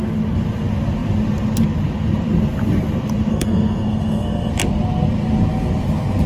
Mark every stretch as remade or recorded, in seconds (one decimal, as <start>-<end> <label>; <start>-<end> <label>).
0.0-3.3 recorded; 3.3-4.5 remade; 4.5-6.3 recorded